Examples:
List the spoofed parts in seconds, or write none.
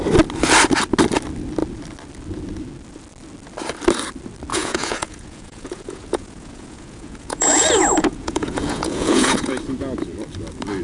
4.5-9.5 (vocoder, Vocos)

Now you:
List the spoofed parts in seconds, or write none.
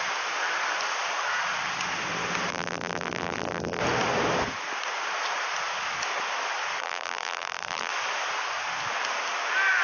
2.5-3.8 (vocoder, BigVGAN v2); 6.8-7.9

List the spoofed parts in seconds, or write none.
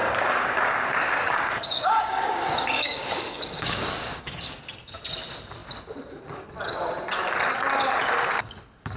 0.0-4.6 (codec, DAC)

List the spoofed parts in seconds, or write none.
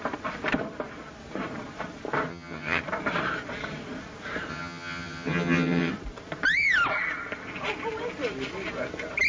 2.3-2.8 (vocoder, HiFi-GAN); 4.5-5.9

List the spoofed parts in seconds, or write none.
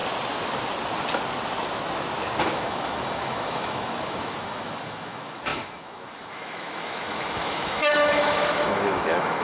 2.4-9.4 (autoencoder, DAC-VAE)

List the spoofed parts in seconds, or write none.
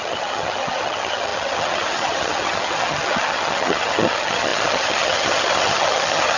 0.0-6.4 (vocoder, HiFi-GAN)